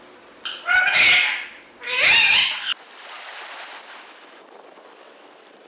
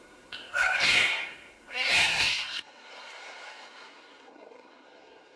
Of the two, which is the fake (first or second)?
second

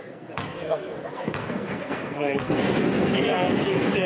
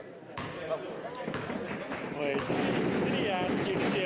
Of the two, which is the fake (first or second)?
first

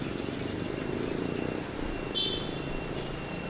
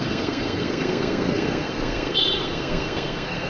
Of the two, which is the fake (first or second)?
second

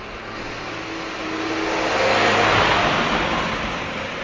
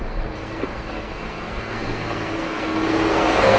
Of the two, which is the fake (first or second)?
second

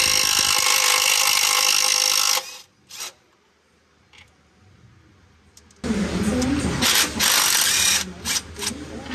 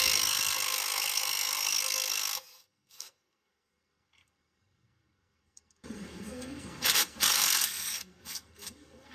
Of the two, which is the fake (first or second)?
second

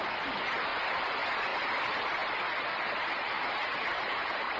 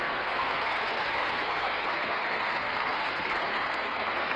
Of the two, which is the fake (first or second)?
second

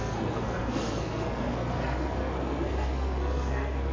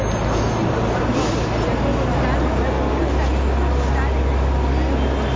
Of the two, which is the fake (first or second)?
first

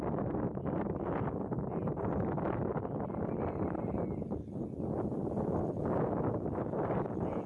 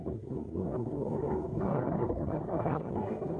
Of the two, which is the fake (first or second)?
second